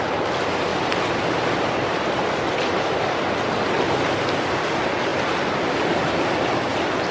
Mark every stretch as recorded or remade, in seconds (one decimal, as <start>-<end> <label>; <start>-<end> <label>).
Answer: 0.0-7.1 recorded